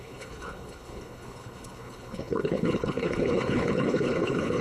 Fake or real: fake